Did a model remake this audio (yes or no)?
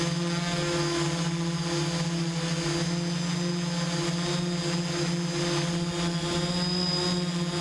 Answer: no